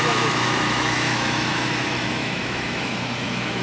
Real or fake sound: fake